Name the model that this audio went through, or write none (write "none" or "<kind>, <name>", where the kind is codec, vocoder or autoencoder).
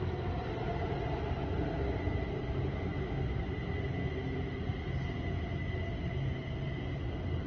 none